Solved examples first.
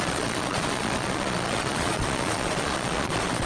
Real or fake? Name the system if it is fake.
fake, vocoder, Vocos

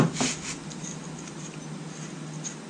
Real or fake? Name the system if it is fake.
real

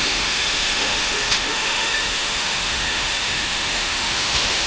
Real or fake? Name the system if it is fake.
fake, autoencoder, DAC-VAE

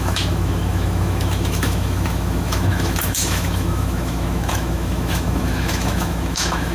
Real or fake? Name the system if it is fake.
fake, autoencoder, DAC-VAE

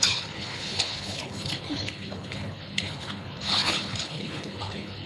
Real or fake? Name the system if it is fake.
fake, codec, HILCodec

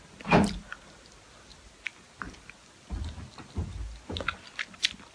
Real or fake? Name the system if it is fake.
real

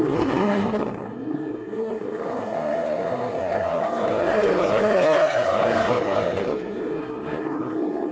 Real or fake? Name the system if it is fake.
fake, codec, SNAC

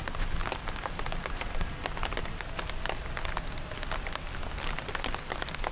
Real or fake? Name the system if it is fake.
real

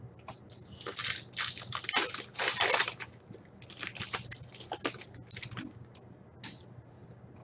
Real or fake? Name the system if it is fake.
real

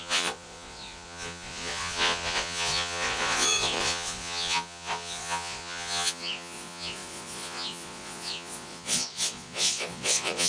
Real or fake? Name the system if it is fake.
fake, vocoder, Vocos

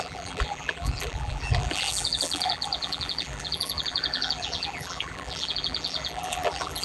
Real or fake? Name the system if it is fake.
fake, vocoder, BigVGAN v2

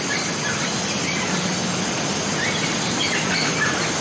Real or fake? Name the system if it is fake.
real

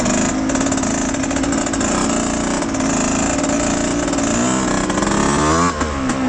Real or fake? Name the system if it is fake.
real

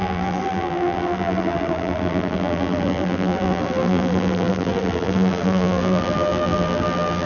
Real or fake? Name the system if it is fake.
fake, vocoder, BigVGAN v2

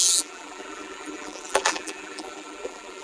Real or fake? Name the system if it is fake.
fake, vocoder, BigVGAN v2